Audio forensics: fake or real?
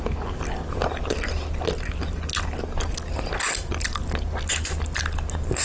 real